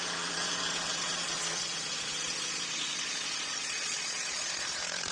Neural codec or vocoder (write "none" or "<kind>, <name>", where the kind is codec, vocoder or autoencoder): vocoder, Vocos